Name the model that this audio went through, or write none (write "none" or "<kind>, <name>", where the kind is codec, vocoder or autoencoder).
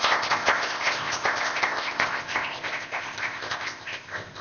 codec, ZipCodec